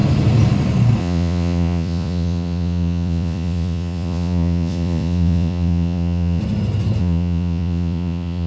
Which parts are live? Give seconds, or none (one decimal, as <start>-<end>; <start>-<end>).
0.0-1.0; 6.4-7.0